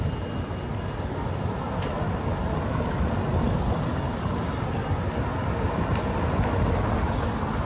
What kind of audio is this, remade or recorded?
recorded